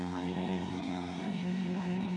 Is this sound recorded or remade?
remade